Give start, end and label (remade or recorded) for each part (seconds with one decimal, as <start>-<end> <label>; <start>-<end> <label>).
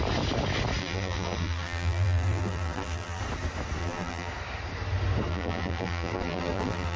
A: 0.0-0.8 recorded; 0.8-3.2 remade; 3.2-3.8 recorded; 3.8-4.3 remade; 4.3-5.3 recorded; 5.3-7.0 remade